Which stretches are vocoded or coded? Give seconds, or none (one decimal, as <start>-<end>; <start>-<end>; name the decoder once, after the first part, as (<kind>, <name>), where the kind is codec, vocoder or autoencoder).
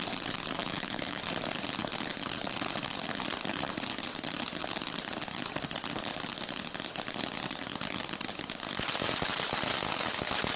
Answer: 0.6-1.2 (autoencoder, DAC-VAE)